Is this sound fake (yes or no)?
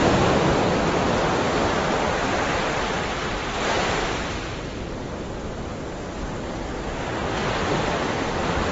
no